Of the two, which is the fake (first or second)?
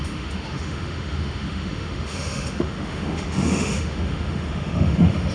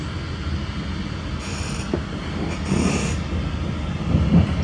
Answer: first